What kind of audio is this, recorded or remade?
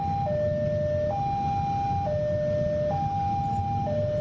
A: recorded